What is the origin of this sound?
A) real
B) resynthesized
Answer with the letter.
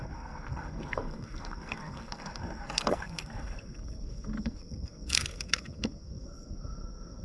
B